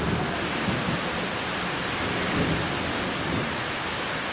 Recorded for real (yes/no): yes